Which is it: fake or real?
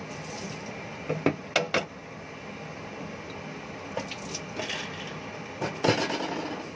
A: real